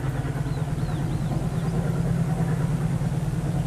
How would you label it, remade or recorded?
recorded